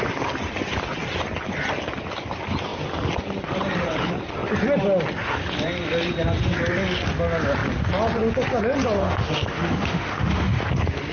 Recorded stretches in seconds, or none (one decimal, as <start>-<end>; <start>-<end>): 0.0-9.0; 10.6-11.1